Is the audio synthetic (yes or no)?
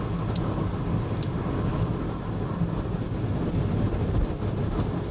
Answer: no